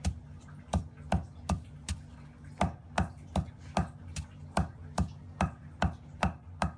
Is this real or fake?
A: real